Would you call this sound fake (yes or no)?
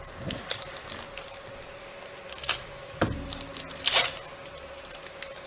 no